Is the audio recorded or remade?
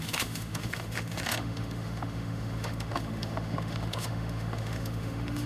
remade